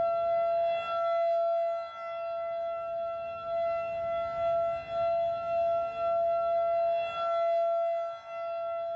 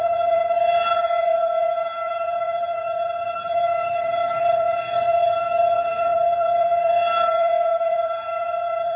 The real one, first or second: first